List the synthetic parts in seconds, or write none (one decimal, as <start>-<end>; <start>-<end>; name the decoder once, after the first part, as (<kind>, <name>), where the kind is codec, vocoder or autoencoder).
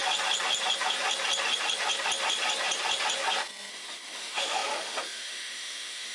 3.7-6.1 (autoencoder, DAC-VAE)